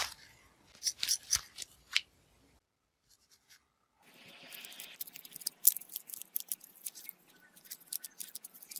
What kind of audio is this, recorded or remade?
recorded